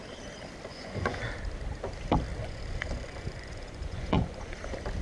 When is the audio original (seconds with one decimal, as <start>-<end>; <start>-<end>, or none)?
0.0-0.7; 1.2-2.4; 4.6-5.0

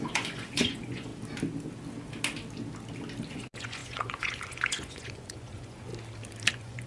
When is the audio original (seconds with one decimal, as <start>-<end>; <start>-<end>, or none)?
1.1-3.3; 5.9-6.5